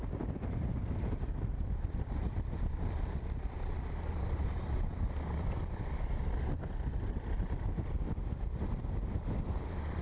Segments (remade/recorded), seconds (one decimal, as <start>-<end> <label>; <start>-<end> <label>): 0.0-0.8 remade; 0.8-1.7 recorded; 1.7-10.0 remade